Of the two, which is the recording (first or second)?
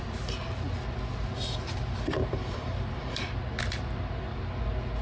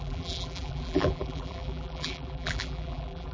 first